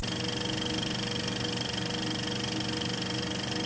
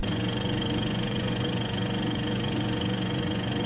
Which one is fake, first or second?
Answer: second